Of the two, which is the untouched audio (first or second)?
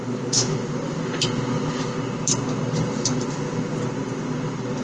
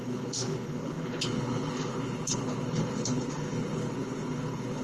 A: first